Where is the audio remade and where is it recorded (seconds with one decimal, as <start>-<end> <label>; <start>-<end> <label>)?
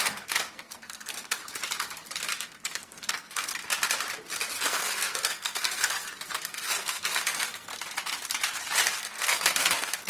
0.0-1.4 remade; 1.4-2.4 recorded; 2.4-3.5 remade; 3.5-4.6 recorded; 4.6-7.7 remade; 7.7-9.0 recorded; 9.0-10.1 remade